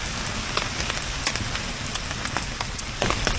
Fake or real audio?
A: real